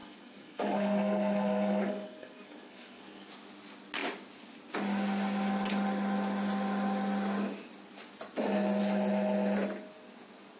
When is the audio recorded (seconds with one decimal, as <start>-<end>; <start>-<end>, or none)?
3.3-10.6